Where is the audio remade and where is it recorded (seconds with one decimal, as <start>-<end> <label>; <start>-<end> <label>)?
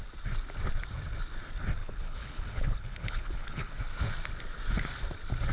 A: 0.0-1.8 recorded; 1.8-3.8 remade; 3.8-5.5 recorded